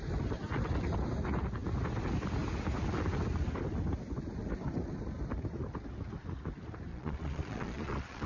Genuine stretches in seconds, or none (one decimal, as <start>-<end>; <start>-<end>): 0.0-6.9